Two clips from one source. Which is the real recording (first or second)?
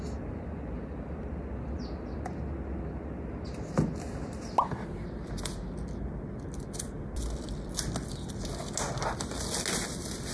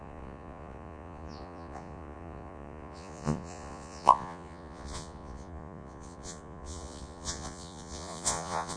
first